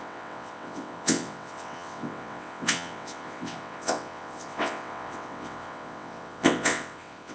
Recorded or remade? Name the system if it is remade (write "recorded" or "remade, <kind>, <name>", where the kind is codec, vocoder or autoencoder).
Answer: remade, vocoder, WaveNeXt